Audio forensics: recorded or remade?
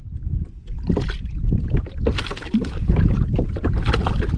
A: recorded